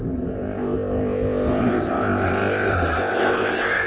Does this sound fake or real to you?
fake